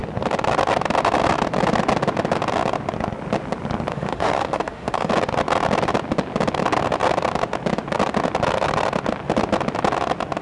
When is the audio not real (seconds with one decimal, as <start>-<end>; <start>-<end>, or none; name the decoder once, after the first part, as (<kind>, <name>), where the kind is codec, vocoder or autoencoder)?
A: 3.9-5.1 (autoencoder, DAC-VAE)